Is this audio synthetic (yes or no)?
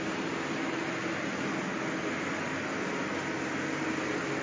no